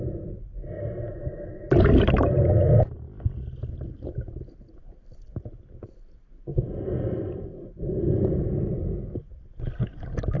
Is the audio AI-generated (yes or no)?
no